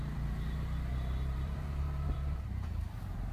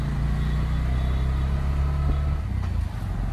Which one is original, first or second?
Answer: second